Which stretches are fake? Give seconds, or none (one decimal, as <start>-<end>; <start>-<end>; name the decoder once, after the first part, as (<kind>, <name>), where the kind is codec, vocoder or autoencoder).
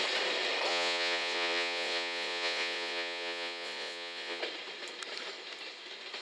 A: 0.7-4.4 (vocoder, Vocos)